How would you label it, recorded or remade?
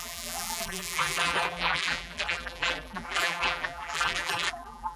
remade